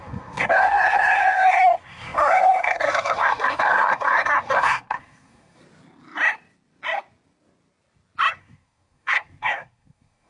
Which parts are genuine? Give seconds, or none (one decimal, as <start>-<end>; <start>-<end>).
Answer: 5.6-8.4